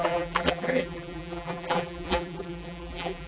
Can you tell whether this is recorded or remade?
remade